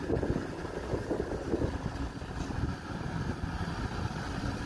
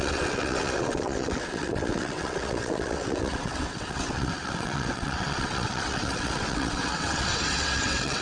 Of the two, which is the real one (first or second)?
first